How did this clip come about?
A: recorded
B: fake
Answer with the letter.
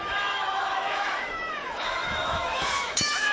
B